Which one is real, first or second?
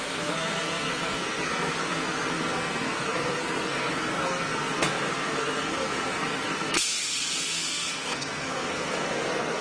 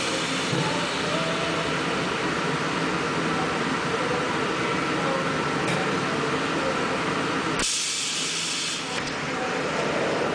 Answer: second